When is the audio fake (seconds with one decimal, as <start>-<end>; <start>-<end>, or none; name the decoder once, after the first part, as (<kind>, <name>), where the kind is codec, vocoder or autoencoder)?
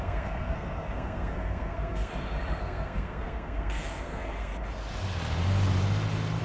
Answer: 0.0-2.1 (codec, SNAC); 2.6-4.5